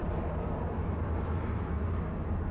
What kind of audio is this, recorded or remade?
recorded